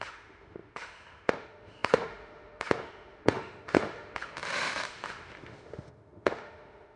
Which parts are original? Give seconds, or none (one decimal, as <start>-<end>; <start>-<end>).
none